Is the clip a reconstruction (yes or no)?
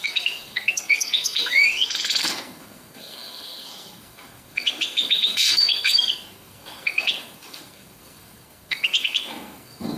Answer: yes